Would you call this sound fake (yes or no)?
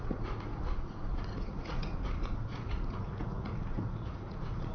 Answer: yes